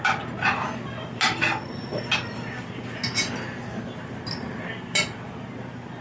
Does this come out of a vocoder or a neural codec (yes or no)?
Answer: no